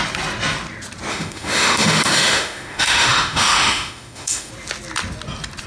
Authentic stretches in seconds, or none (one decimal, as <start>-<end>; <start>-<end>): 0.0-1.1; 4.5-5.7